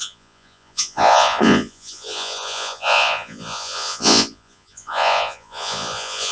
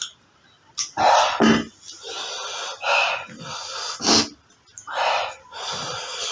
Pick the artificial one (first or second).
first